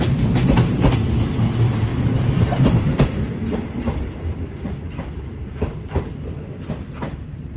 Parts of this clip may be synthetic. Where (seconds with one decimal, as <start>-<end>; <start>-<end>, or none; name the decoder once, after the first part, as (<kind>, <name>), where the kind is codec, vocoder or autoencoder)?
1.9-6.5 (vocoder, BigVGAN v2)